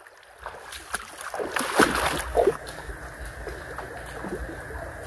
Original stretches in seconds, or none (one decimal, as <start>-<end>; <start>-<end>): 0.0-2.3; 2.9-5.1